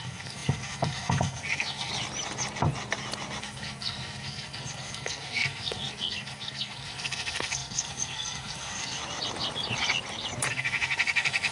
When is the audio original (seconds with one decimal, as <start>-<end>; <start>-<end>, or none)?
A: 1.9-3.4; 9.0-10.5